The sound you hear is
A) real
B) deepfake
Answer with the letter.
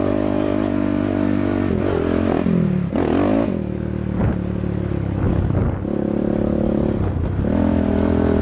A